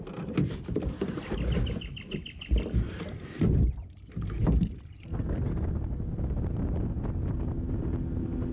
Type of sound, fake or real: real